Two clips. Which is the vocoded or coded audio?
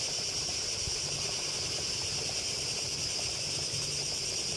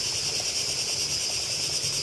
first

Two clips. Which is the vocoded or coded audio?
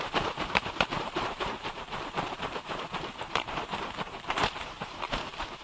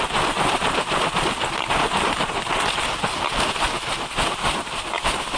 first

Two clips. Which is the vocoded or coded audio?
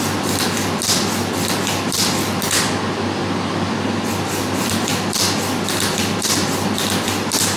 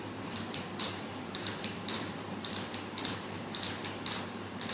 second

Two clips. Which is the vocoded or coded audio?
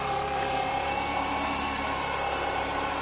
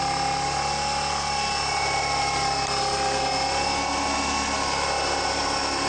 first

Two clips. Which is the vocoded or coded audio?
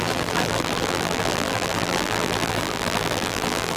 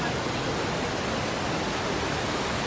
first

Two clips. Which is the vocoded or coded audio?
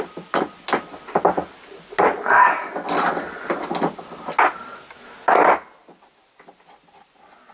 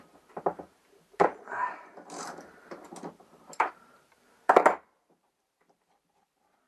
second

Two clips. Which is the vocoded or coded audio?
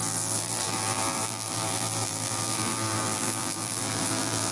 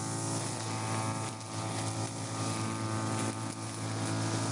first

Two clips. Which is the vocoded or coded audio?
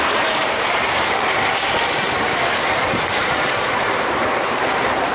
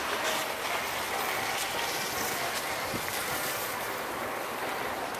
first